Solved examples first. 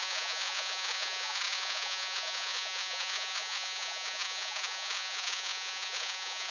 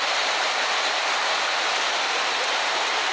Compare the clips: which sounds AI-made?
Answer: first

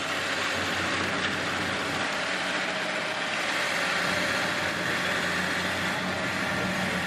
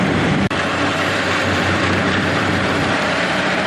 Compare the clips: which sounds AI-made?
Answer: second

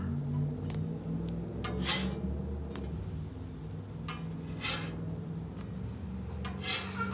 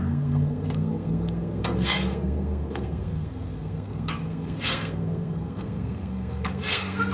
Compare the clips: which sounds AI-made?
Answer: second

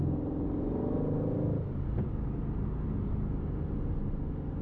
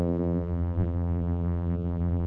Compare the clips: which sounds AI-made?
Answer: second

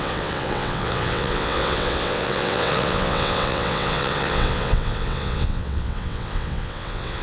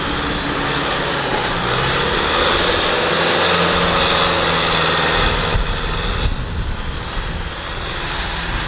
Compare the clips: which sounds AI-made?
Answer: first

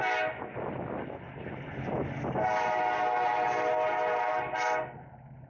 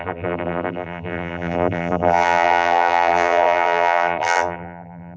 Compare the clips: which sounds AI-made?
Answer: second